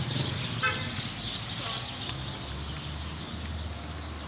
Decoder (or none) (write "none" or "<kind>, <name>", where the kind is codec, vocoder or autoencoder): none